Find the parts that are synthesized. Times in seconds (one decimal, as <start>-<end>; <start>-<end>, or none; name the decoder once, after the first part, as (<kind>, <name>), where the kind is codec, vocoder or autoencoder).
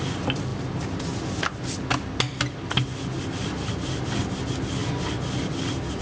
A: none